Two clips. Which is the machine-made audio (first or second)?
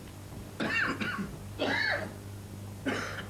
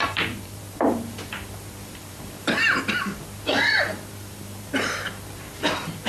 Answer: second